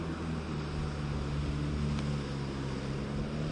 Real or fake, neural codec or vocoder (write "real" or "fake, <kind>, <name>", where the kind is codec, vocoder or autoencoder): real